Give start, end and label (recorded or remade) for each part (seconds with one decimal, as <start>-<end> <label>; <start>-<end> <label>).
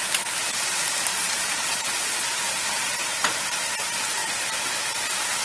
0.0-1.1 recorded; 1.1-2.4 remade; 2.4-5.4 recorded